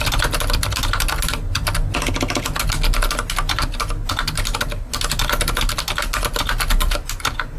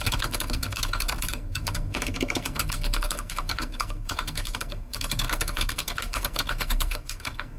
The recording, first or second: first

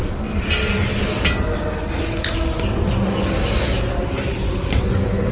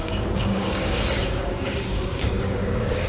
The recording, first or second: first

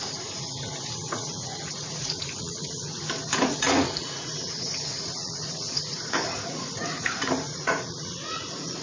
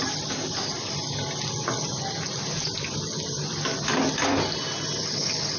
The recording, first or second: second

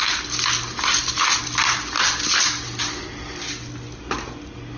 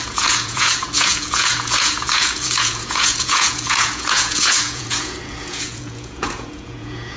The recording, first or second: first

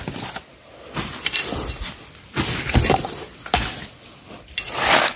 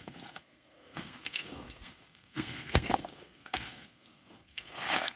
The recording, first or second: first